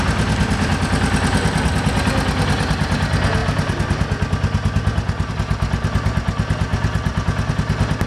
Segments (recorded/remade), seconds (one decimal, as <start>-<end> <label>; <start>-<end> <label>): 0.0-8.1 recorded